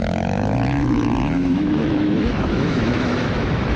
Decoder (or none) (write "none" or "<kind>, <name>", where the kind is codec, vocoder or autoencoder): autoencoder, DAC-VAE